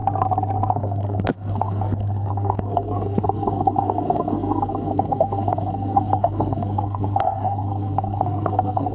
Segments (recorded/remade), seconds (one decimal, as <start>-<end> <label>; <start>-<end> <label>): 0.0-0.7 recorded; 0.7-8.9 remade